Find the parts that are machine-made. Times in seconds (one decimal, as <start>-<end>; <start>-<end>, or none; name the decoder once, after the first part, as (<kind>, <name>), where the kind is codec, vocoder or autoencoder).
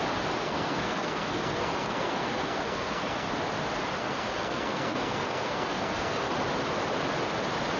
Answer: 0.4-3.3 (codec, SNAC); 4.0-6.3